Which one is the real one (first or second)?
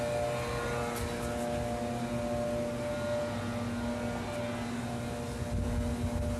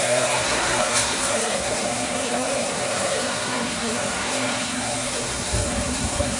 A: first